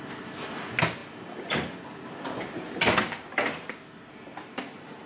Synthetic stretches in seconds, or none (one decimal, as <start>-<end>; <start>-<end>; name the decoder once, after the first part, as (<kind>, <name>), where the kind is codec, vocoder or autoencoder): none